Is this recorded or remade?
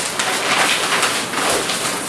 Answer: recorded